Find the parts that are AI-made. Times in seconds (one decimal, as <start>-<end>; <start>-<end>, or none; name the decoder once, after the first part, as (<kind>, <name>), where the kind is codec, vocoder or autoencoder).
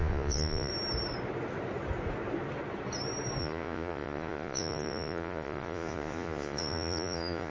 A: 0.0-0.7 (vocoder, Vocos); 3.4-7.5